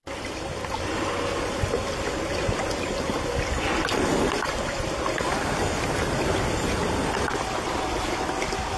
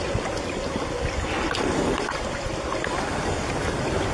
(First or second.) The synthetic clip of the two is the second